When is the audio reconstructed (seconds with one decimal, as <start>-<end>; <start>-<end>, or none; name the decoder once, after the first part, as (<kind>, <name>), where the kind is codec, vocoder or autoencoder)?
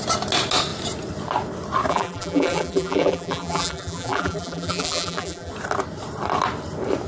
1.9-5.5 (vocoder, BigVGAN v2)